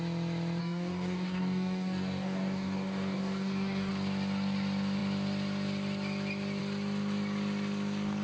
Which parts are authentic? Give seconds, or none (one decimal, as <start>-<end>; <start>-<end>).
0.0-0.6; 3.9-8.2